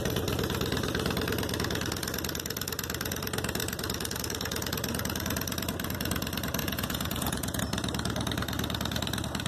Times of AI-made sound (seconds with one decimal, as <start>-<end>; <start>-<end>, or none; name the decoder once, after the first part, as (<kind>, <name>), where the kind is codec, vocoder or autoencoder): 6.6-7.6 (vocoder, Vocos)